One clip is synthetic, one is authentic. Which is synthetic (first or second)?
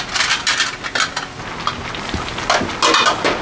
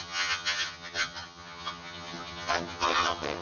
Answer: second